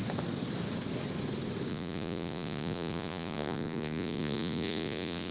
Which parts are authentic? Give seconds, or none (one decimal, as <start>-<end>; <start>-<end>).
0.0-1.7